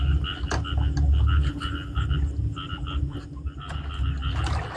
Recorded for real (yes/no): yes